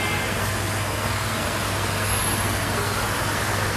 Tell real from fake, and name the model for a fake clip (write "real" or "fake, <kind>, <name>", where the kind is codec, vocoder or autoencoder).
fake, codec, SNAC